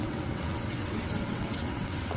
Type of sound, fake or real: fake